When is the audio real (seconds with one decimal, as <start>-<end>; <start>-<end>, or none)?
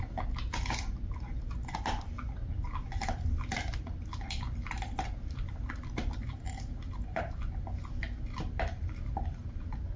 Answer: 0.0-2.5; 7.2-10.0